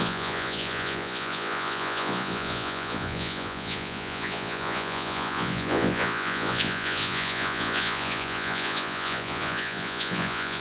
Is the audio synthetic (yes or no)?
yes